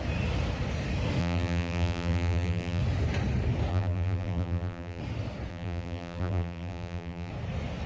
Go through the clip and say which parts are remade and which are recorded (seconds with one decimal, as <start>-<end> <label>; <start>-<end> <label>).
0.0-1.2 recorded; 1.2-2.8 remade; 2.8-3.7 recorded; 3.7-5.0 remade; 5.0-5.5 recorded; 5.5-7.3 remade; 7.3-7.9 recorded